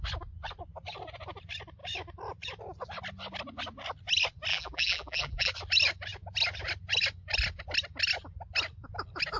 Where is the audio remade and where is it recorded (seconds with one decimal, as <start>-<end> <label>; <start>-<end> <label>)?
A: 0.0-4.5 recorded; 4.5-5.5 remade; 5.5-9.4 recorded